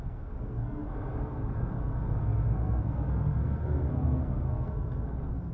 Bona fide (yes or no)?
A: no